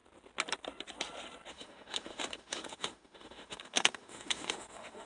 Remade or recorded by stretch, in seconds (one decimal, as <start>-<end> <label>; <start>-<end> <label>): 0.0-1.5 recorded; 1.5-5.1 remade